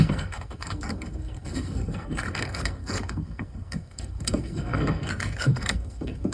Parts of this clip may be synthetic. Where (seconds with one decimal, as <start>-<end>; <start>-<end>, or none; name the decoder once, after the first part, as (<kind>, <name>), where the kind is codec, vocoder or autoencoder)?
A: 0.0-6.3 (codec, SNAC)